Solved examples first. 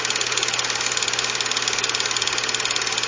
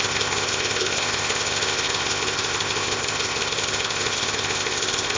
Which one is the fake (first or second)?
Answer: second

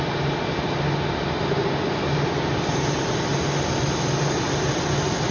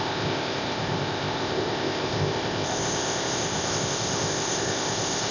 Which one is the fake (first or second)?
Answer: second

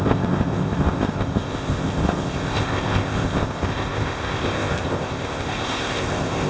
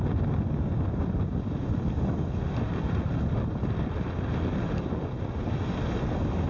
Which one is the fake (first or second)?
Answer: first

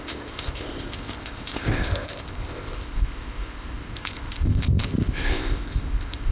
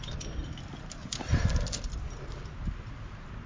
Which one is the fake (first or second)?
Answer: first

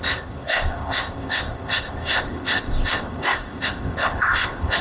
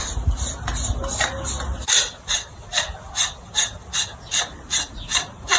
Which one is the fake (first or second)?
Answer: first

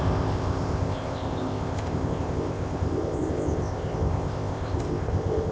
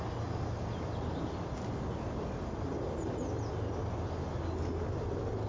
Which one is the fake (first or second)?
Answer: first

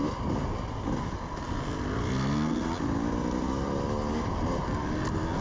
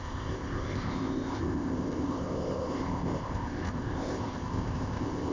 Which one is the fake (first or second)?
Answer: second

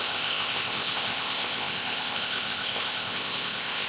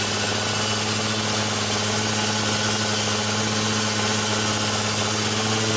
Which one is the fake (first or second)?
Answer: first